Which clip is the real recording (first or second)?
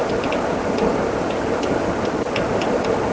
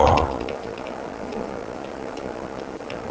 first